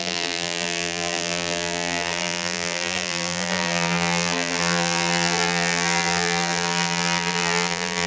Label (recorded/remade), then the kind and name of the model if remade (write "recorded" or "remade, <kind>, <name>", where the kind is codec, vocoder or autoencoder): remade, vocoder, BigVGAN v2